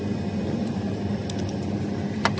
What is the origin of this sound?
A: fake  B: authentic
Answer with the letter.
B